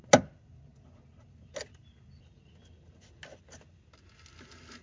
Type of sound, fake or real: real